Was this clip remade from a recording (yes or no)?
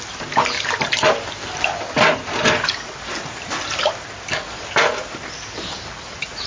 no